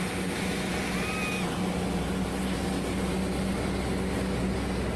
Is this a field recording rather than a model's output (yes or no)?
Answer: yes